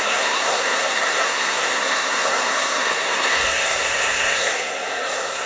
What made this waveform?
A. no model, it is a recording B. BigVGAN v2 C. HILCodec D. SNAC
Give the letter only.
D